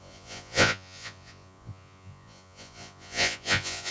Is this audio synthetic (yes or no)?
yes